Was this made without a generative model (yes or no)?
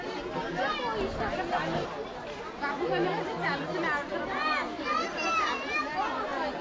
yes